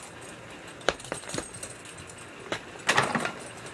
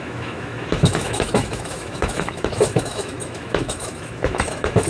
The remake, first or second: second